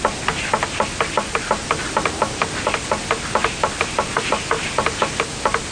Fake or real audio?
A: real